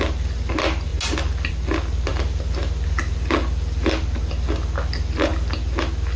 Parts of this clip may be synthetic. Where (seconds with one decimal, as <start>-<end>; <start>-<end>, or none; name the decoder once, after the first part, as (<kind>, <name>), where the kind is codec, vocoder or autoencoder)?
none